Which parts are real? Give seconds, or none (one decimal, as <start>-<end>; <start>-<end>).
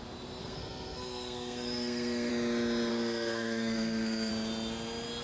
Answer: 0.0-0.4; 2.3-2.9; 4.3-5.2